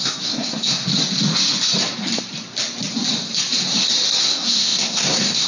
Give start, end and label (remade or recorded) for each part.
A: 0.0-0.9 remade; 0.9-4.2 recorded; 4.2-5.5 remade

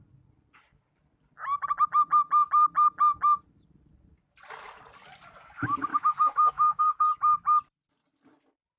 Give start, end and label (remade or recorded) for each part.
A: 0.0-5.9 recorded; 5.9-6.8 remade; 6.8-8.8 recorded

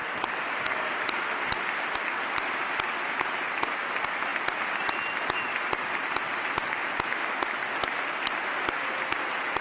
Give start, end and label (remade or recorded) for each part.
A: 0.0-9.6 recorded

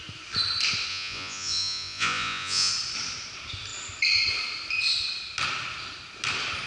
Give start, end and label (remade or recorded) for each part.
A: 0.0-0.9 recorded; 0.9-2.7 remade; 2.7-6.7 recorded

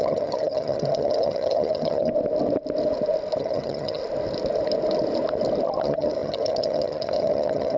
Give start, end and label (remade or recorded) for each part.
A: 0.0-2.1 remade; 2.1-3.4 recorded; 3.4-4.0 remade; 4.0-5.8 recorded; 5.8-7.8 remade

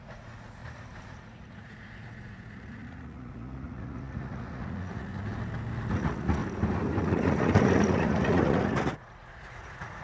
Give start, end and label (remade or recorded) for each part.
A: 0.0-0.6 remade; 0.6-1.1 recorded; 1.1-5.1 remade; 5.1-5.9 recorded; 5.9-6.4 remade; 6.4-7.0 recorded; 7.0-10.0 remade

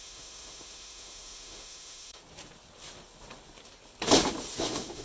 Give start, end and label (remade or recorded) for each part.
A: 0.0-2.2 remade; 2.2-4.6 recorded; 4.6-5.0 remade